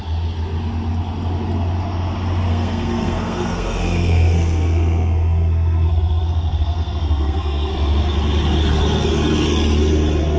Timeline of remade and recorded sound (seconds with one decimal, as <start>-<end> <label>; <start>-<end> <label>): 0.0-2.5 recorded; 2.5-7.7 remade; 7.7-10.4 recorded